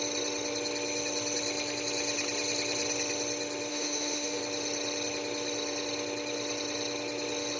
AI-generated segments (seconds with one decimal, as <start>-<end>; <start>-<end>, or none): 3.7-4.4